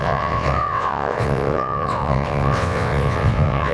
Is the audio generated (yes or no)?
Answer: yes